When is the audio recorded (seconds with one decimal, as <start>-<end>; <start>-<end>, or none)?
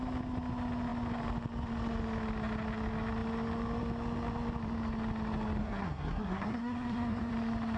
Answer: 0.0-5.6; 7.3-7.8